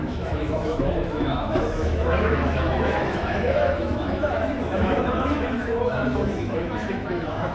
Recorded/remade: remade